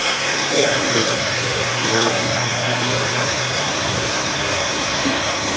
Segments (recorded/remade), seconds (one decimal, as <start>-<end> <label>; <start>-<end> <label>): 0.0-5.6 remade